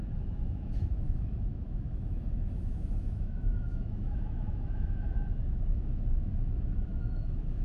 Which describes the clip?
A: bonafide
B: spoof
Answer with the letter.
B